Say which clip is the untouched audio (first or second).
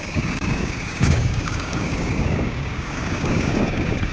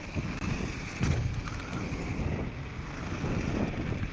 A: second